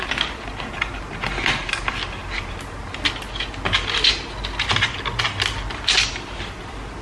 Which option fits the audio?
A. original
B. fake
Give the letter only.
A